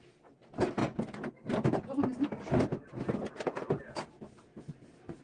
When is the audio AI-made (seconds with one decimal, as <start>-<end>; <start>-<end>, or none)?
0.8-3.8; 4.5-5.2